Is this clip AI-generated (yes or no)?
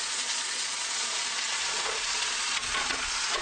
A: yes